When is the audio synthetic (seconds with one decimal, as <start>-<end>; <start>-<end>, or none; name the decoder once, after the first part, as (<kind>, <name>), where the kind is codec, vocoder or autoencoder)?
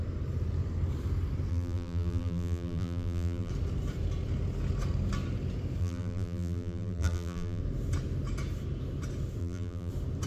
1.5-3.5 (vocoder, BigVGAN v2); 5.8-7.6; 9.4-9.9